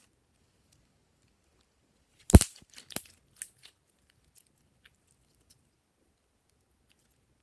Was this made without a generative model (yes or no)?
yes